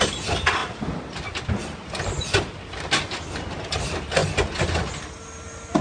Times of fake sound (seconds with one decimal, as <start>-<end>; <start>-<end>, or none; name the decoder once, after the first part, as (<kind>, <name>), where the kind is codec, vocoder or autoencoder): none